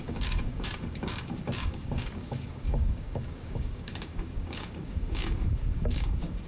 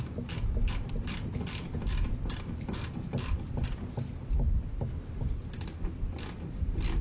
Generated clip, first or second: first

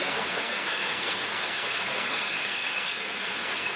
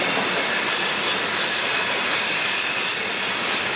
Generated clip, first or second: first